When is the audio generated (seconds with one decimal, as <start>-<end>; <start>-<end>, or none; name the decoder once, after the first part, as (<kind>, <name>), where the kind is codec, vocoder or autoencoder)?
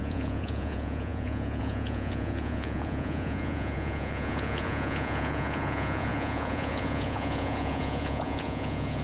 0.0-9.0 (vocoder, Vocos)